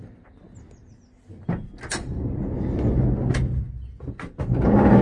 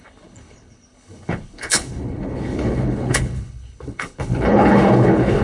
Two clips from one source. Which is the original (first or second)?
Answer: first